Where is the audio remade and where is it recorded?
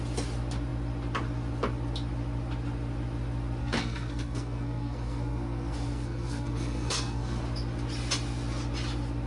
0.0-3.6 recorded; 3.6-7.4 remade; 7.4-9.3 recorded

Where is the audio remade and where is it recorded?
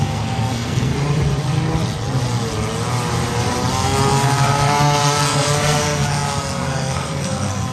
0.0-0.9 remade; 0.9-3.7 recorded; 3.7-7.7 remade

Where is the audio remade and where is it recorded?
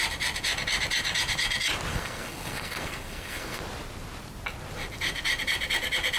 0.0-1.9 recorded; 1.9-3.6 remade; 3.6-6.2 recorded